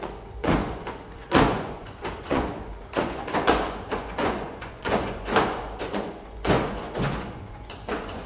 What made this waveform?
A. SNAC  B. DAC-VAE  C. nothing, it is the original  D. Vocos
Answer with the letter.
D